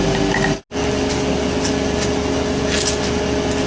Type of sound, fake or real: real